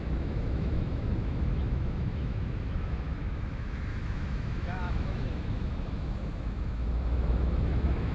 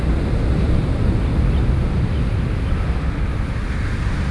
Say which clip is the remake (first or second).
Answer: first